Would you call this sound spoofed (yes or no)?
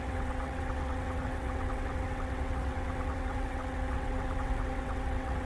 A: yes